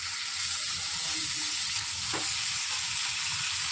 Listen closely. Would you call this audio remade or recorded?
recorded